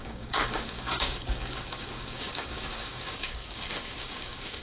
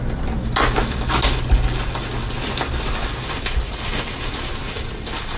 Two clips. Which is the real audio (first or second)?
second